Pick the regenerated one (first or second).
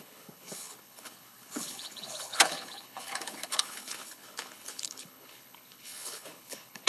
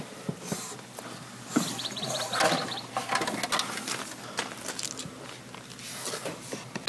first